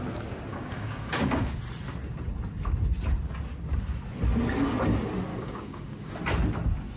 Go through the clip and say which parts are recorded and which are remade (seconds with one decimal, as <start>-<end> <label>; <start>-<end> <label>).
0.0-0.5 recorded; 0.5-1.6 remade; 1.6-5.3 recorded; 5.3-6.1 remade; 6.1-7.0 recorded